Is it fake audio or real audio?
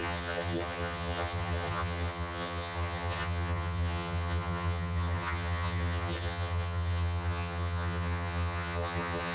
fake